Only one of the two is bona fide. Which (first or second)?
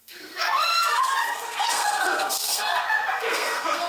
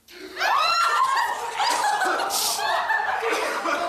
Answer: second